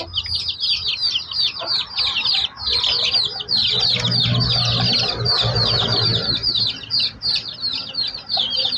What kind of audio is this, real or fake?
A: real